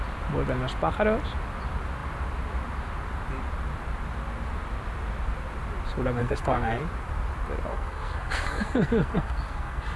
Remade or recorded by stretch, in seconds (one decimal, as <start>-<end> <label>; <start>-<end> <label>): 0.0-6.2 recorded; 6.2-6.8 remade; 6.8-7.7 recorded; 7.7-10.0 remade